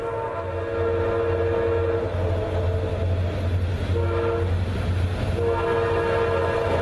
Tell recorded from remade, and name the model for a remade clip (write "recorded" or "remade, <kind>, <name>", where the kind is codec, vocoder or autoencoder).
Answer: recorded